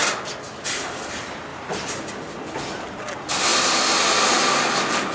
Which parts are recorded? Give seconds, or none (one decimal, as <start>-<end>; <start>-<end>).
0.0-1.5; 2.1-5.1